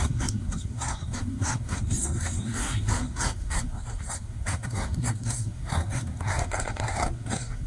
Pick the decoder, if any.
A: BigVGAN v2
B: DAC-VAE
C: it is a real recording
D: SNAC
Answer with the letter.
D